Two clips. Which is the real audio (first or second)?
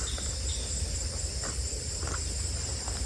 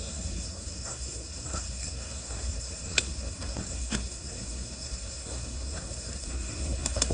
first